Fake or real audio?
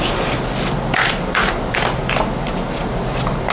real